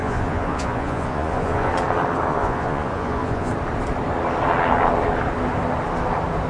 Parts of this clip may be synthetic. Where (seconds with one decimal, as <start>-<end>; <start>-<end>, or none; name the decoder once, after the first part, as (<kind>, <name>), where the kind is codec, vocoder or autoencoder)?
0.0-1.7 (vocoder, Vocos); 2.3-3.5